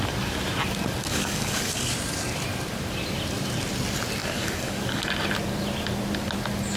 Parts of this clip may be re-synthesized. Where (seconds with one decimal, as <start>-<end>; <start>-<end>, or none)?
1.1-1.9; 4.2-5.1